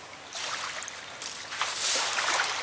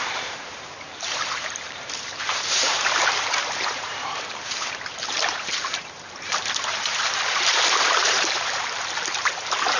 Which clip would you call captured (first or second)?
first